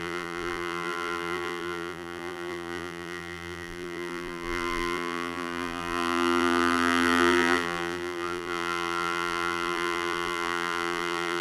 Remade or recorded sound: remade